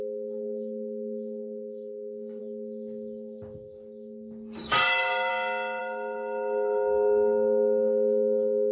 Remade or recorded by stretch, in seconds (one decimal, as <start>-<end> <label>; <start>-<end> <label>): 0.0-2.4 remade; 2.4-4.6 recorded; 4.6-5.3 remade; 5.3-5.8 recorded; 5.8-8.7 remade

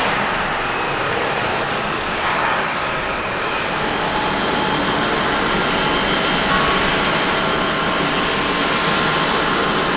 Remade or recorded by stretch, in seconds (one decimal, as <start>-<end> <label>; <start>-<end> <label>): 0.0-1.5 recorded; 1.5-3.7 remade; 3.7-10.0 recorded